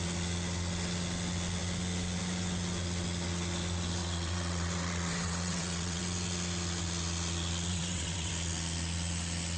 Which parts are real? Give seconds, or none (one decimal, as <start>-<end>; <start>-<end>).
0.0-4.0; 6.0-7.7; 8.3-9.6